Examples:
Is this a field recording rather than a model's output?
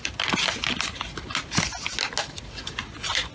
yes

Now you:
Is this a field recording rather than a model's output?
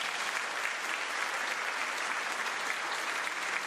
yes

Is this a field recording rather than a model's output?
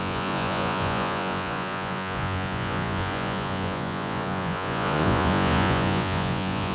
no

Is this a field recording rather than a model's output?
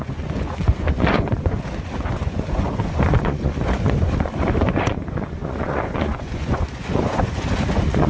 no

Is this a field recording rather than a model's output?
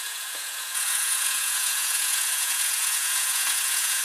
no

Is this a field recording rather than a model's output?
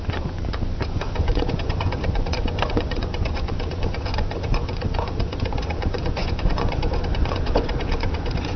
no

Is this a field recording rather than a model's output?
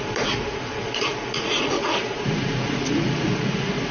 no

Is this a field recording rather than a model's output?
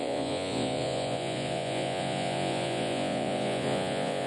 no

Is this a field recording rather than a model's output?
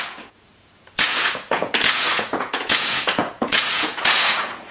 no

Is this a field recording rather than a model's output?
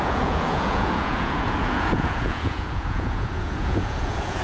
no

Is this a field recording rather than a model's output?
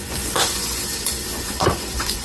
no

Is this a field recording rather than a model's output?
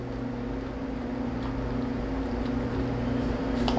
yes